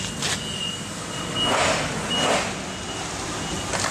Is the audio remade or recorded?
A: recorded